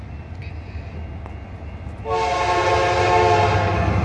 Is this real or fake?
real